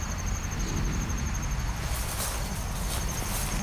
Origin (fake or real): real